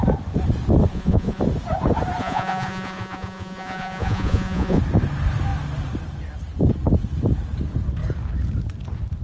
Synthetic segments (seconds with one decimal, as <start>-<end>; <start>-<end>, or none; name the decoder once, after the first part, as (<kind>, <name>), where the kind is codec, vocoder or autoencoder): 0.9-1.4 (vocoder, Vocos); 2.2-4.8